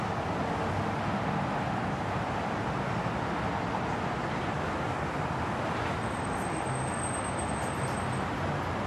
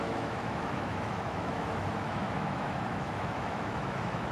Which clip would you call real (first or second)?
first